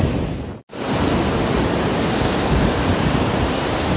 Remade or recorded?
recorded